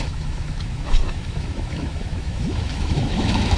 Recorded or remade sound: remade